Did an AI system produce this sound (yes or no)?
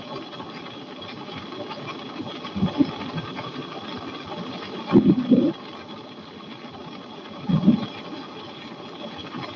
no